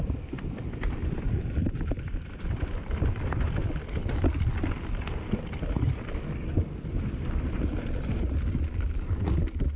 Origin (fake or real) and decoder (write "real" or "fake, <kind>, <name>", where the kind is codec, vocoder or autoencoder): real